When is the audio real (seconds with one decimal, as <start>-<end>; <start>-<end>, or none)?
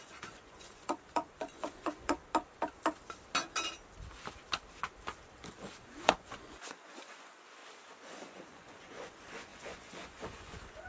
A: 2.2-5.8; 7.6-8.1